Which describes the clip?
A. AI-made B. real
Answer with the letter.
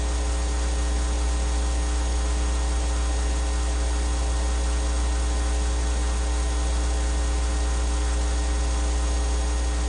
B